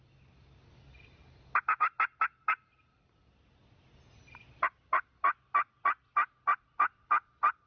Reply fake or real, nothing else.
real